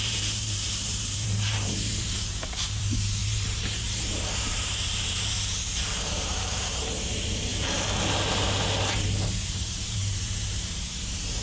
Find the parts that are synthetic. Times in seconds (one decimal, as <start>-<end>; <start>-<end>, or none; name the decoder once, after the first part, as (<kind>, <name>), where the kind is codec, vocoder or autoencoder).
0.0-7.5 (vocoder, BigVGAN v2); 8.9-11.4